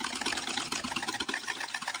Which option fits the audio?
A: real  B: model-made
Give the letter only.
A